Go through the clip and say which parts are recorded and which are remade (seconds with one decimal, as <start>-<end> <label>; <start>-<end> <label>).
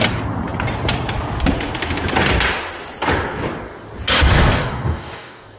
0.0-4.6 recorded; 4.6-5.6 remade